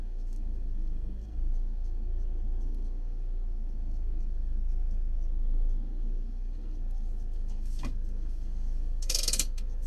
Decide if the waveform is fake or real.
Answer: fake